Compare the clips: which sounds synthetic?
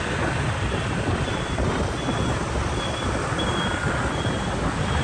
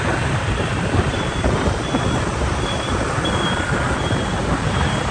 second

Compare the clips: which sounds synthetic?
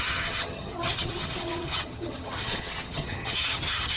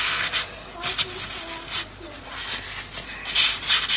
first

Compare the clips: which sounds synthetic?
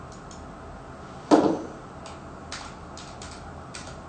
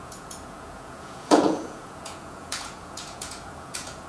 second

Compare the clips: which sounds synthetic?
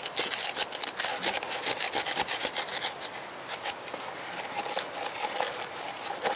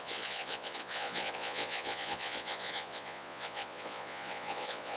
second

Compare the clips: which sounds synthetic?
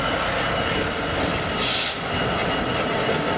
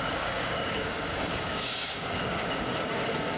second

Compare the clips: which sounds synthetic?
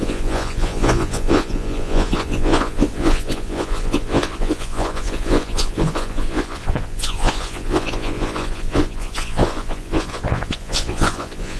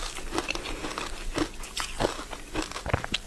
first